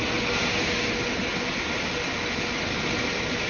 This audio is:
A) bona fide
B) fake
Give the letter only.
A